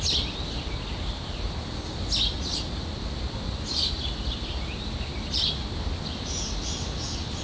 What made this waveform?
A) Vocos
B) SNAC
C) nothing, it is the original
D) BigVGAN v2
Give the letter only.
C